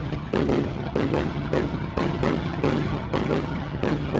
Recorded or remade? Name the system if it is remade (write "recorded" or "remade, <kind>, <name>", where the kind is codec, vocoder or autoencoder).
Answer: remade, vocoder, HiFi-GAN